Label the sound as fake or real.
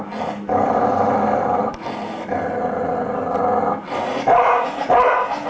real